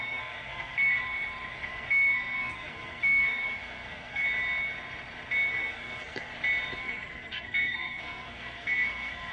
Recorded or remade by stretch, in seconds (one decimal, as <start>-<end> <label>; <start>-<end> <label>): 0.0-1.0 remade; 1.0-1.5 recorded; 1.5-4.2 remade; 4.2-5.5 recorded; 5.5-6.3 remade; 6.3-6.8 recorded; 6.8-9.3 remade

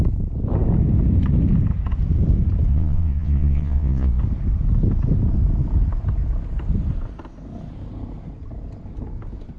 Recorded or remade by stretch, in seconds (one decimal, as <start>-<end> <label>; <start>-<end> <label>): 0.0-2.7 recorded; 2.7-4.2 remade; 4.2-9.6 recorded

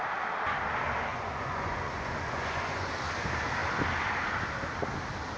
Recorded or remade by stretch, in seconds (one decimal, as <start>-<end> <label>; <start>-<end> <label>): 0.0-1.1 recorded; 1.1-2.9 remade; 2.9-5.4 recorded

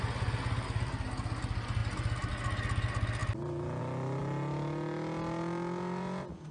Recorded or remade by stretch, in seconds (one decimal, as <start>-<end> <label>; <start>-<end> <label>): 0.0-6.5 recorded